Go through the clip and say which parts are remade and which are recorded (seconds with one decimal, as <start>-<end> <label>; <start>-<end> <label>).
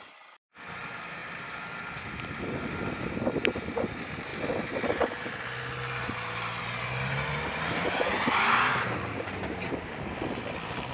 0.0-8.7 recorded; 8.7-9.3 remade; 9.3-10.9 recorded